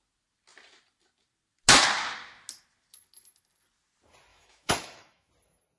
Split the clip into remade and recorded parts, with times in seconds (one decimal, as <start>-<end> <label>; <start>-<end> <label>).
0.0-4.3 recorded; 4.3-5.3 remade; 5.3-5.8 recorded